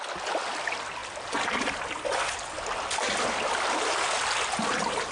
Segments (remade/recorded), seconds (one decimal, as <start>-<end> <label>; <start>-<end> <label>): 0.0-5.1 recorded